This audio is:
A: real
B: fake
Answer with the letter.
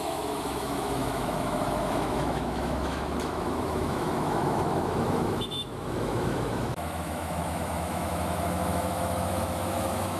B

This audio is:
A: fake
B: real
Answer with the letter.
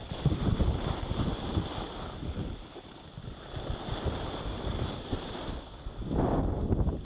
B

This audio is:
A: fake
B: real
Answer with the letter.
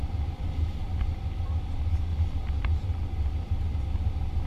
B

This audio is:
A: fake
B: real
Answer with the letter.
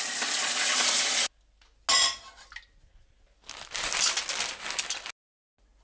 B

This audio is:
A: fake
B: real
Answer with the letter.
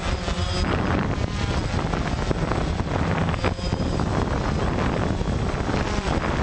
B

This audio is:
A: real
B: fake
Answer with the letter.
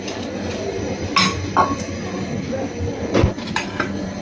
A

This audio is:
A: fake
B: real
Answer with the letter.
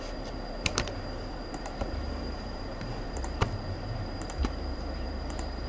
A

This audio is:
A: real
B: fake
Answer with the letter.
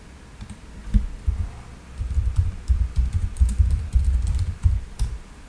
B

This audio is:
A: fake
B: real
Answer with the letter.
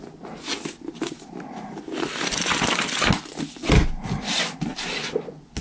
B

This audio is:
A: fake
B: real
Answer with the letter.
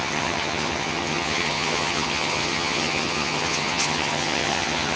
A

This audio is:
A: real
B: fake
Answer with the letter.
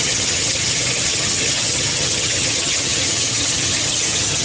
B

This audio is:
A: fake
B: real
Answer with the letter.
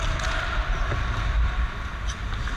B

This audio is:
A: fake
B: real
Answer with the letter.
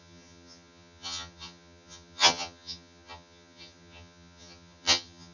A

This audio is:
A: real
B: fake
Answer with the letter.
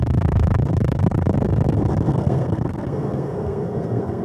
B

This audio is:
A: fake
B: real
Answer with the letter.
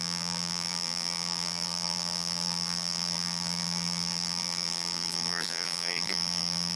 A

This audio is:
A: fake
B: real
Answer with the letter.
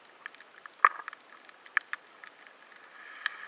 B